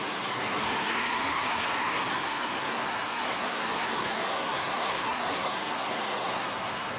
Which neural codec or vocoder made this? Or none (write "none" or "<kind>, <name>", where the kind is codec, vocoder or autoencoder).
codec, SNAC